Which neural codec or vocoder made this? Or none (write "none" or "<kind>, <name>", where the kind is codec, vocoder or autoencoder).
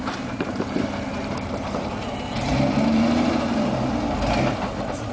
vocoder, BigVGAN v2